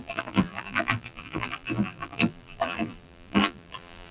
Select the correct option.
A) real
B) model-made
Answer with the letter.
B